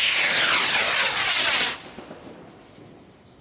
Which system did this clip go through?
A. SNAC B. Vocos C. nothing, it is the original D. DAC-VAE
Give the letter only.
C